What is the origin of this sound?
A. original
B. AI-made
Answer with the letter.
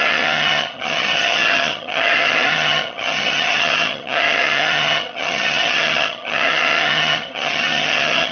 B